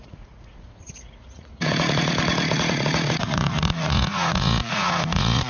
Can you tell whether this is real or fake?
fake